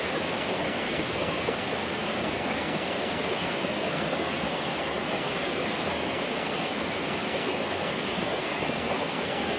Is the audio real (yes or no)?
no